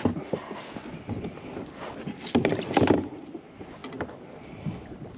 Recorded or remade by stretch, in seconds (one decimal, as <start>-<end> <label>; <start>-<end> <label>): 0.0-5.2 recorded